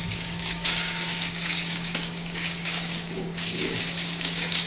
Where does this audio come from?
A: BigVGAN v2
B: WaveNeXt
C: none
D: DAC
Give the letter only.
D